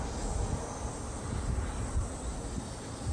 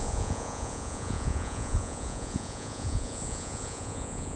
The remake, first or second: second